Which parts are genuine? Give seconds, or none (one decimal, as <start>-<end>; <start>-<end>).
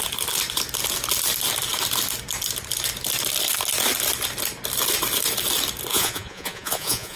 0.0-5.9